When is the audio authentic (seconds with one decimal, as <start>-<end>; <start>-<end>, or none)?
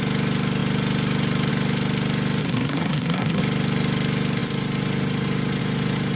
0.0-2.4; 3.4-6.2